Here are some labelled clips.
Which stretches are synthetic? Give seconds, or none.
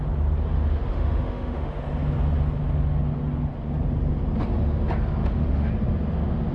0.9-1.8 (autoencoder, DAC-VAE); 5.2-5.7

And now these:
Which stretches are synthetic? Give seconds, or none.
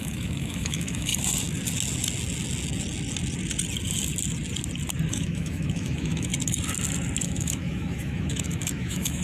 0.0-1.1 (autoencoder, DAC-VAE); 5.1-6.3; 7.2-9.2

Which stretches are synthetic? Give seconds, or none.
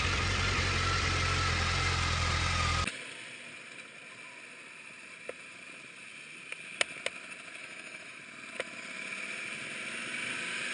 7.6-8.2 (autoencoder, DAC-VAE)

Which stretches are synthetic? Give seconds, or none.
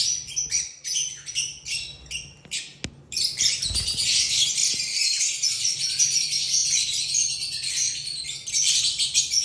none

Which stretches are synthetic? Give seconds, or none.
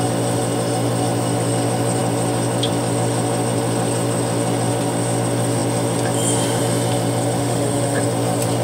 7.4-8.0 (autoencoder, DAC-VAE)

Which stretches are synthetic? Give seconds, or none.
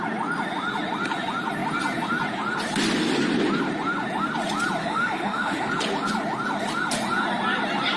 4.8-5.7 (autoencoder, DAC-VAE)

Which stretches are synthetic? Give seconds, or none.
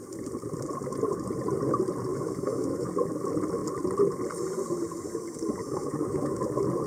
2.1-2.9 (autoencoder, DAC-VAE); 5.6-6.4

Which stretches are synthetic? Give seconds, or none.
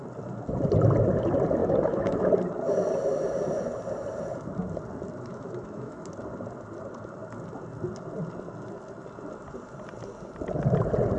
1.6-2.3 (autoencoder, DAC-VAE); 5.3-6.0